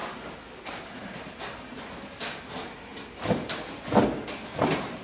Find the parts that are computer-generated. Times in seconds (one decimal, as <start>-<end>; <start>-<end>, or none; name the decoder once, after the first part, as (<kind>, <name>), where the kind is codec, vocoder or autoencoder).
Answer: none

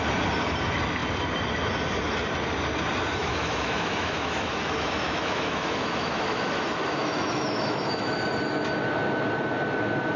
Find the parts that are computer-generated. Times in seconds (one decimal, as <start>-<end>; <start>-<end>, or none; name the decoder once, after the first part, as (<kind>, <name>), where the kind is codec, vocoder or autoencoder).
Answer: 3.2-8.2 (autoencoder, DAC-VAE)

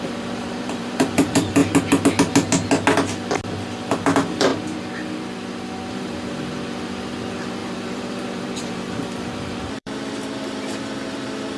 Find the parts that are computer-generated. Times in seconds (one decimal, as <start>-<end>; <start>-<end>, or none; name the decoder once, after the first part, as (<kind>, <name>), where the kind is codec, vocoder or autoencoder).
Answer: 0.0-1.6 (vocoder, BigVGAN v2); 3.9-4.5; 5.9-11.6